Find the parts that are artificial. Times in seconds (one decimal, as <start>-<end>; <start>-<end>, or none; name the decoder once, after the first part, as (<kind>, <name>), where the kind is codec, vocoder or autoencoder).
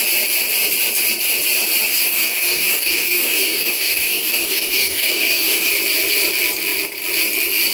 1.9-5.7 (codec, DAC)